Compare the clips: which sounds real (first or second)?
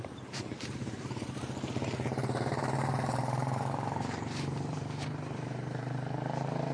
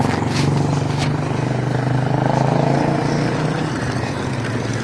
second